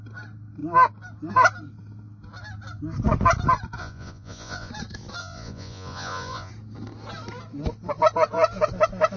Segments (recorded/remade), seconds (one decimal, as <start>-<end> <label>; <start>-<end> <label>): 0.0-3.8 recorded; 3.8-4.7 remade; 4.7-5.2 recorded; 5.2-6.5 remade; 6.5-9.2 recorded